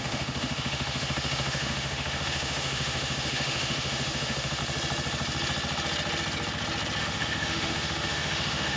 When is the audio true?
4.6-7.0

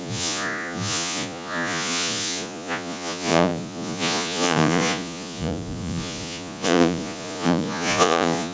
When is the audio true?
none

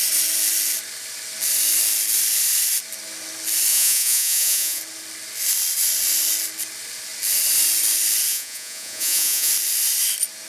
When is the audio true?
0.0-3.7; 4.8-8.3; 9.5-10.5

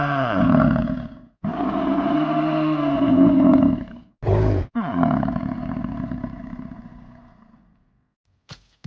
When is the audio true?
0.0-8.9

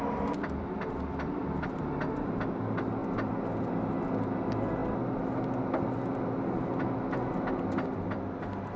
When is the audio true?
0.0-8.8

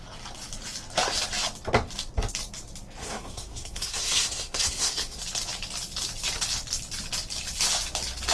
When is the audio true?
0.0-3.0; 5.2-8.3

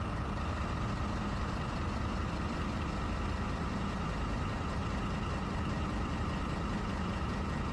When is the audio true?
0.0-7.7

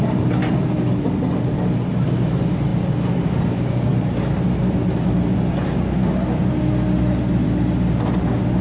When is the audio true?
0.0-8.6